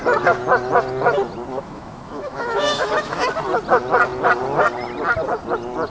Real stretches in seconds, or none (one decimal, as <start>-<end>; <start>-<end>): 0.0-1.5; 3.3-5.9